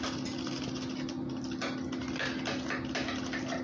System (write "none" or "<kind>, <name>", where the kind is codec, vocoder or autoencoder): none